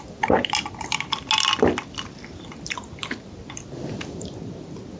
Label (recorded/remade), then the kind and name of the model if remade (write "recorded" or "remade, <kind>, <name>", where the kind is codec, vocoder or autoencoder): recorded